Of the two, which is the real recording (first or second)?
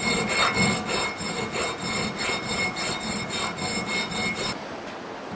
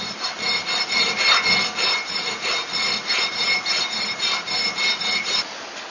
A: first